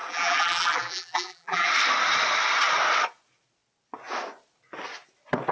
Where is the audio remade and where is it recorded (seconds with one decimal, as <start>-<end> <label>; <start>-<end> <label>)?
0.0-1.7 remade; 1.7-5.5 recorded